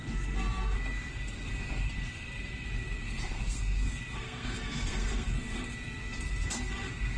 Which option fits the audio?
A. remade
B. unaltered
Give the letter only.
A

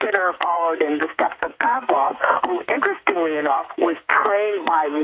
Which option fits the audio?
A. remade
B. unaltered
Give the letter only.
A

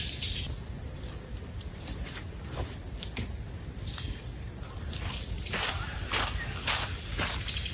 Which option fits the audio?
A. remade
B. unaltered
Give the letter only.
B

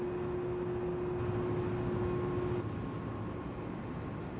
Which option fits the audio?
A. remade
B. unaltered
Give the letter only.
B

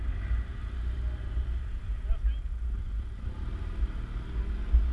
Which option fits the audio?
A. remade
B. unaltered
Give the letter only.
B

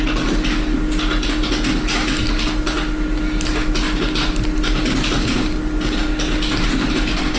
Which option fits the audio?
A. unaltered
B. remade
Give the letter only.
A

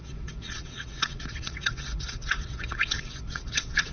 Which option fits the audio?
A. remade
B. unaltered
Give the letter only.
A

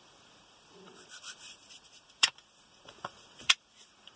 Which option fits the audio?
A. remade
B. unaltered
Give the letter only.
A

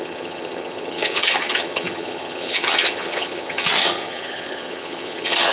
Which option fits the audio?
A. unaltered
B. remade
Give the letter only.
B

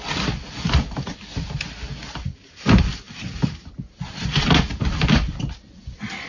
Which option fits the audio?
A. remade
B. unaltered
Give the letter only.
B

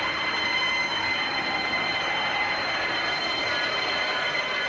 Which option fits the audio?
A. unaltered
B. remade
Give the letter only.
B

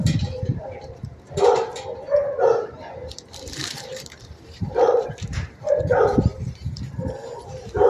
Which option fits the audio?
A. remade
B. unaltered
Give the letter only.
A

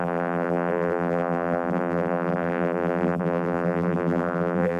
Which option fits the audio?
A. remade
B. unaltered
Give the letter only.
A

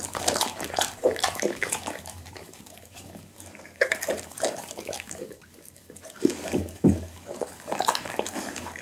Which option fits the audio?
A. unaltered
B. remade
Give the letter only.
B